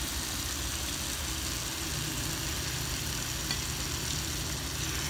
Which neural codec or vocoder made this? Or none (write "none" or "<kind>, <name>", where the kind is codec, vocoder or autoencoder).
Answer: none